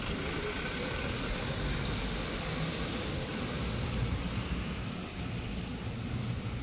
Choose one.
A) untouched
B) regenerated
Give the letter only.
A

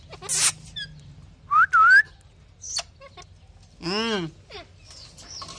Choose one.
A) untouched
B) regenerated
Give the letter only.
A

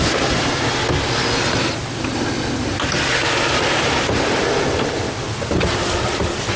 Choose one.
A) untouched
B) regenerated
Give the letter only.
A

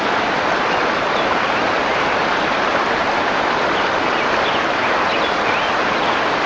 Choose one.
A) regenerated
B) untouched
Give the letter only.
B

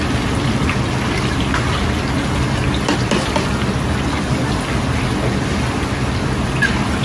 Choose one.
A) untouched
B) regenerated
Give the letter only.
A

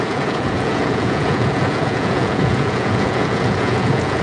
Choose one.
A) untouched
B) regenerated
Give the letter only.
B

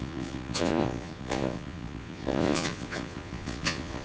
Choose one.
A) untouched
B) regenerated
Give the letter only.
B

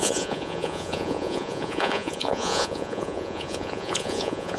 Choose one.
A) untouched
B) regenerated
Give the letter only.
B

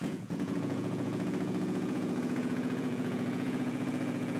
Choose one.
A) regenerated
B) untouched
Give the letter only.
A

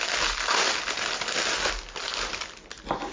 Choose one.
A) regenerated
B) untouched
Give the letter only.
B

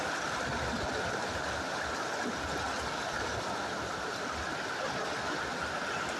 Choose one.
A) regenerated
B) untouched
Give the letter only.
B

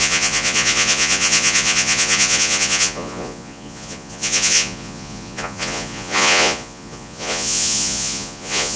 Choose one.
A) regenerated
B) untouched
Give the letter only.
A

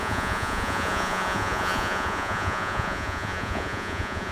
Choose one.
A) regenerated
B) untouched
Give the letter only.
A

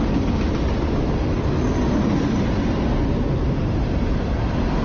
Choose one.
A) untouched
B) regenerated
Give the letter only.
A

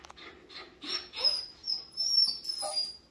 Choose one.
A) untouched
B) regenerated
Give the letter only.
A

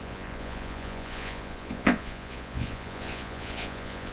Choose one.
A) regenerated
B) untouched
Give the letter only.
A